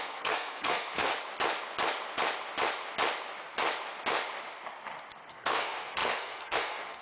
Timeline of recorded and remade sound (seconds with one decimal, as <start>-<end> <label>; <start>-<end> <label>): 0.0-1.1 remade; 1.1-5.3 recorded; 5.3-7.0 remade